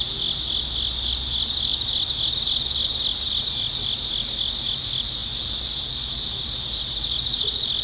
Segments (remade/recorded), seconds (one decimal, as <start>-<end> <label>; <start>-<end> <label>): 0.0-7.8 recorded